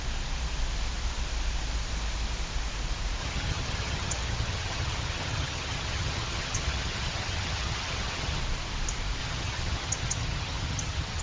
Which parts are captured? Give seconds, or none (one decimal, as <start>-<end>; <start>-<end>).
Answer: 0.0-3.2; 8.4-9.2